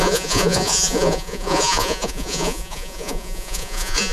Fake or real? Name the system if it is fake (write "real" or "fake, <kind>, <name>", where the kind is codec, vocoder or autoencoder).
fake, vocoder, Vocos